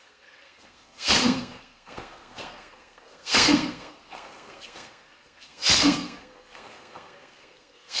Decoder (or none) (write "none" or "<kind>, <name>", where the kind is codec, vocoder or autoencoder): codec, SNAC